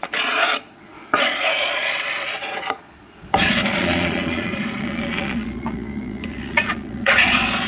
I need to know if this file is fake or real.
fake